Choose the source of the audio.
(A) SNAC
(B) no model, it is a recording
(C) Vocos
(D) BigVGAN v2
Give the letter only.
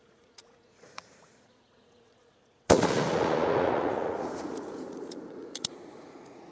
C